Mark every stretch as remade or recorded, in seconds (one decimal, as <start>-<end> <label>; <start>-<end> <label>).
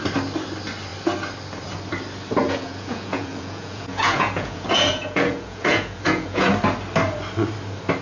0.0-2.4 recorded; 2.4-6.5 remade; 6.5-8.0 recorded